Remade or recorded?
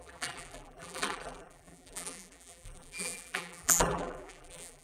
remade